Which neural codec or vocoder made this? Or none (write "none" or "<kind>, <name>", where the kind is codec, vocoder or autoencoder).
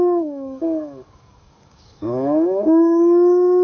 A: codec, DAC